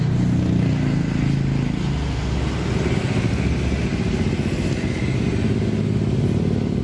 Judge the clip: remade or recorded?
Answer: recorded